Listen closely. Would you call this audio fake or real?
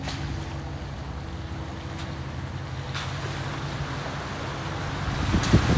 real